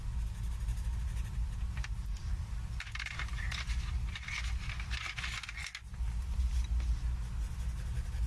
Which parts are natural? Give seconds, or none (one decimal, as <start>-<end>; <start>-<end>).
0.0-5.9; 6.4-8.3

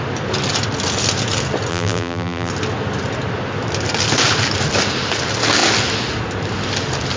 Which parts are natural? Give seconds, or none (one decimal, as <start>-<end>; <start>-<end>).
0.0-1.7; 2.5-7.2

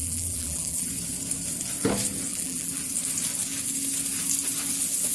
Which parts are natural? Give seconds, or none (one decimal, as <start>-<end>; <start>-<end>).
0.9-2.3; 2.8-5.1

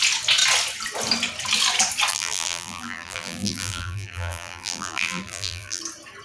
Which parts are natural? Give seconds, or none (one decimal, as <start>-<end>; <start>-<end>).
0.0-2.1; 5.8-6.2

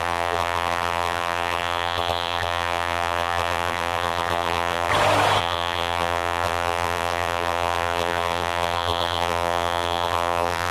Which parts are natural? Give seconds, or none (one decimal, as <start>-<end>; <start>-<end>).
4.9-5.4